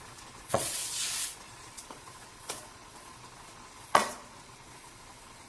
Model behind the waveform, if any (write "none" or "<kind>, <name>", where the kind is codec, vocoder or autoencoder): vocoder, Vocos